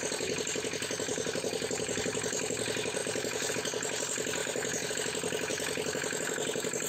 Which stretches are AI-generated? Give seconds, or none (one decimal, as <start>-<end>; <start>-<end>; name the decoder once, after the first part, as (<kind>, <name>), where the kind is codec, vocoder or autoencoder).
1.1-2.0 (vocoder, BigVGAN v2); 3.0-3.5; 4.4-4.9